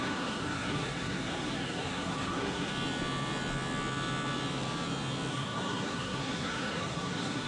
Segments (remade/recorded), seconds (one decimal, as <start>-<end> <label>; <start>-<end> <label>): 0.0-2.7 remade; 2.7-5.3 recorded; 5.3-7.5 remade

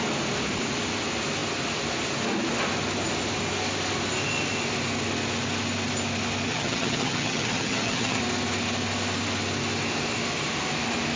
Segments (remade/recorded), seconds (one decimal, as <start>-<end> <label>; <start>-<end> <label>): 0.0-6.5 recorded; 6.5-8.2 remade; 8.2-11.2 recorded

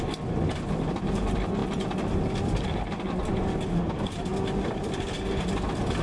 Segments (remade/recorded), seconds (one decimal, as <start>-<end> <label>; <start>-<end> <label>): 0.0-6.0 recorded

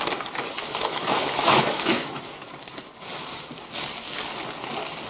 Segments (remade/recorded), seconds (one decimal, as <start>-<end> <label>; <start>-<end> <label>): 0.0-0.6 recorded; 0.6-2.2 remade; 2.2-5.1 recorded

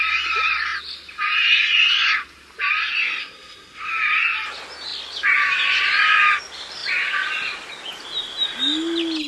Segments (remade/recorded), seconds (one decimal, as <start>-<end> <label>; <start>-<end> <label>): 0.0-3.2 recorded; 3.2-3.9 remade; 3.9-9.3 recorded